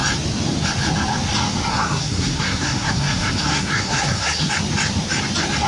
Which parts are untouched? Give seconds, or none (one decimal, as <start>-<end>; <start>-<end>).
0.0-1.7; 4.5-5.7